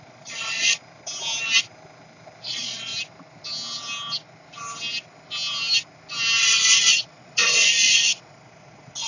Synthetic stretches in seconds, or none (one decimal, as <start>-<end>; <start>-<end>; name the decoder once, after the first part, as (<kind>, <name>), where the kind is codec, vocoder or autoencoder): 0.0-0.8 (vocoder, Vocos); 2.4-2.9; 6.4-9.1